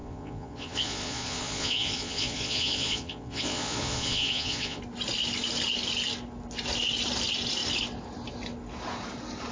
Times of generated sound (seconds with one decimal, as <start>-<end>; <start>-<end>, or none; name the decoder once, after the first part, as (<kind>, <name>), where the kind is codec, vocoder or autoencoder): 0.0-4.8 (vocoder, Vocos)